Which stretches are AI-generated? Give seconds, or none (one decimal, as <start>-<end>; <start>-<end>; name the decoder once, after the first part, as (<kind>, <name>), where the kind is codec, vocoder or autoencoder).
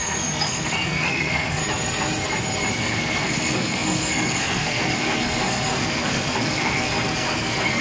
0.0-1.6 (codec, SNAC); 2.8-7.8